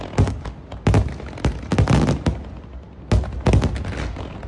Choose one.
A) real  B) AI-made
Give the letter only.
A